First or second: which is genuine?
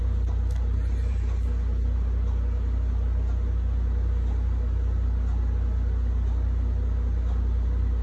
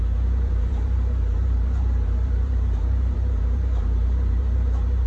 first